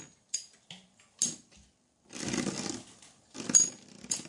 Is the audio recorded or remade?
recorded